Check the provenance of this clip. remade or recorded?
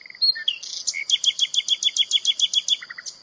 recorded